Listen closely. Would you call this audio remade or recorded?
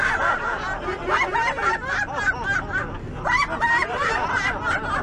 recorded